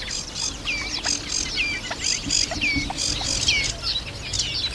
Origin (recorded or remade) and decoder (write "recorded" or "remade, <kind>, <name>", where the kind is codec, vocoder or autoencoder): recorded